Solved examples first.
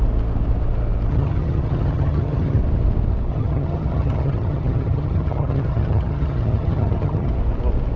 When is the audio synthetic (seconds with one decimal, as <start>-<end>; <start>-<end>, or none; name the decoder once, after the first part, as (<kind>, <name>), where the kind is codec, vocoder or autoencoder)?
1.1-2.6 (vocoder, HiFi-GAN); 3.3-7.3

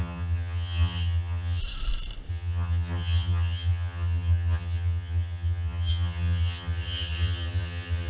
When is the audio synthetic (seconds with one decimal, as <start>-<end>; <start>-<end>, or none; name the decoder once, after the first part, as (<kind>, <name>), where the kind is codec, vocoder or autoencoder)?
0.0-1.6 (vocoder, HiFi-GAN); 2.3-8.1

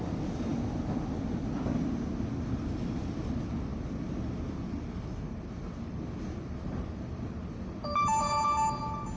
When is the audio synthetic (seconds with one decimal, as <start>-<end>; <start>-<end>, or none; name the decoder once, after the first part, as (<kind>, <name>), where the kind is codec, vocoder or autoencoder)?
none

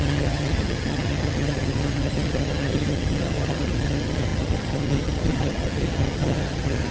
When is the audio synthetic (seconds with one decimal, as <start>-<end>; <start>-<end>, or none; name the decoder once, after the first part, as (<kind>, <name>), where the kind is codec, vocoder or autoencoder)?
0.0-6.9 (vocoder, HiFi-GAN)

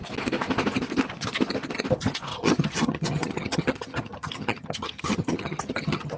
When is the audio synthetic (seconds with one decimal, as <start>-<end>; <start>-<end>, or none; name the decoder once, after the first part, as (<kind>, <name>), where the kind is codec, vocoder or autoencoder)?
2.3-6.2 (vocoder, HiFi-GAN)